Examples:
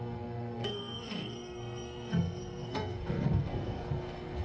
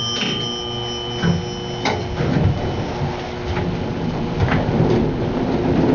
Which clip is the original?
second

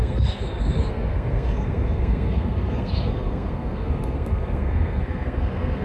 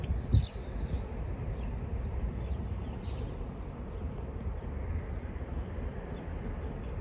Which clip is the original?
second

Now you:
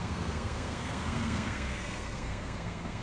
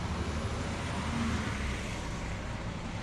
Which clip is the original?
second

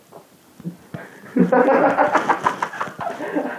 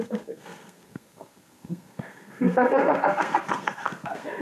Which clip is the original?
first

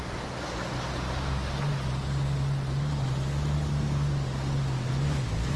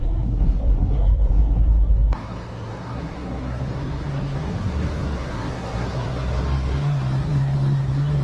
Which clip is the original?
first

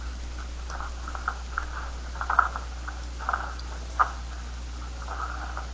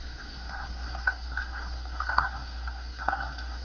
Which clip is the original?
first